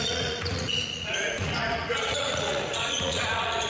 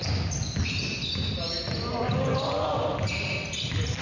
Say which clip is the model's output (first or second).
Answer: first